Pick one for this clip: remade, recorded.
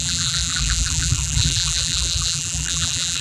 remade